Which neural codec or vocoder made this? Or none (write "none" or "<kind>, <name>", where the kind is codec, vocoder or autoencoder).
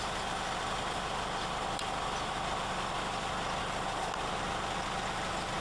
none